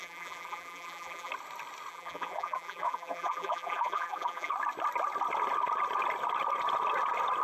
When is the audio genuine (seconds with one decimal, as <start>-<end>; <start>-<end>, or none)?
1.3-1.9; 4.5-7.4